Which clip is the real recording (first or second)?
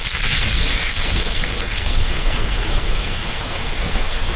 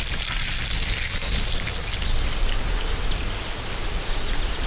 second